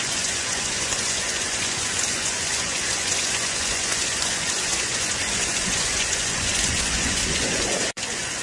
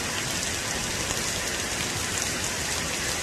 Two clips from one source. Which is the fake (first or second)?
first